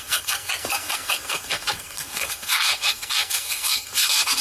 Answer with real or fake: fake